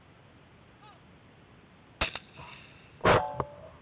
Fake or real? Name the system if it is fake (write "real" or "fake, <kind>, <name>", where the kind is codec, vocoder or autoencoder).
real